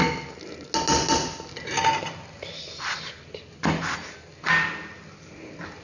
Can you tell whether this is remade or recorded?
recorded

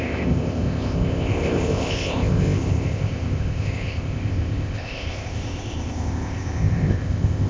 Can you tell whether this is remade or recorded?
remade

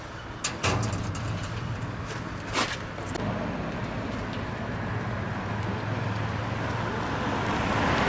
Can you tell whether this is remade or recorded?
recorded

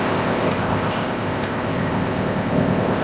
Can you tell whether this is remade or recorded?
remade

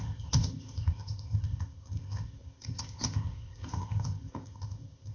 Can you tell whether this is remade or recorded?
remade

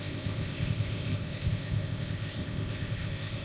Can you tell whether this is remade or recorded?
remade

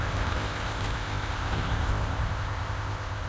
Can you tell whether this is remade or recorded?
remade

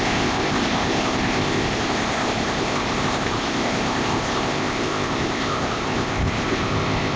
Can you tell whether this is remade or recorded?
remade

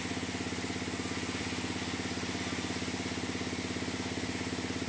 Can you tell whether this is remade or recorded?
recorded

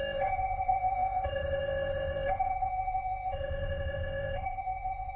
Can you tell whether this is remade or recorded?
remade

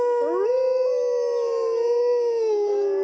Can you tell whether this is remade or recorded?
recorded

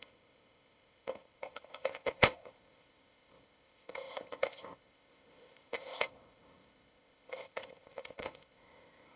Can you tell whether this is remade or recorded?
remade